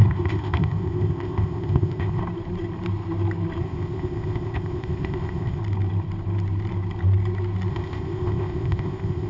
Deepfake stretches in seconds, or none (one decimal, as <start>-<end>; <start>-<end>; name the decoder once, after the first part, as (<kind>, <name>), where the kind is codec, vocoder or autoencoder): 0.0-2.2 (codec, ZipCodec); 3.6-5.6; 7.7-9.3